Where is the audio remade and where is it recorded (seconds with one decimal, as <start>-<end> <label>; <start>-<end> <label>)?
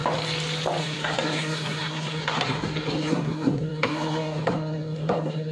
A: 0.0-0.8 recorded; 0.8-5.5 remade